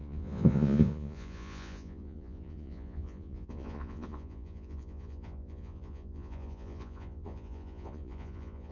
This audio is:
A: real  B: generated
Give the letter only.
B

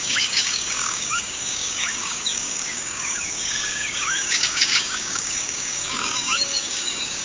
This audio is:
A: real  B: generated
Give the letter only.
B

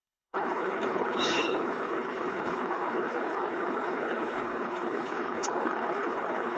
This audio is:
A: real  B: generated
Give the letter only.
B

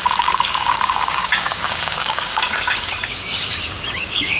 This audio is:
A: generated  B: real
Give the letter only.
A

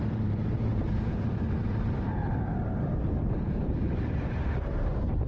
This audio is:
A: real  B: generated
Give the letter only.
B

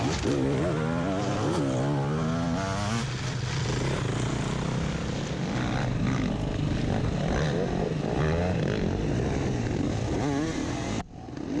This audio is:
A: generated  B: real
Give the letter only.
B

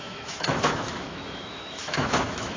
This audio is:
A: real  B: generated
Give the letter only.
B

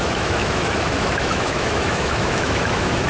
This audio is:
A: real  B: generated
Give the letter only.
B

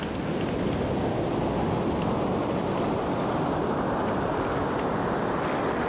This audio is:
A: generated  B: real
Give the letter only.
B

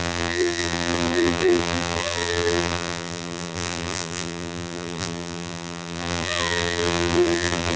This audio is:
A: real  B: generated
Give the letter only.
B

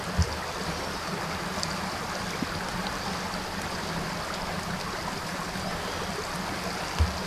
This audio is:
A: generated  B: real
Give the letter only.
B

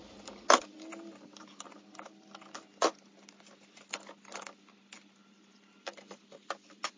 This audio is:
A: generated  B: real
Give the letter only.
B